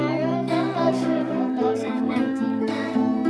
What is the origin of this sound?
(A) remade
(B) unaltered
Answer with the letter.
A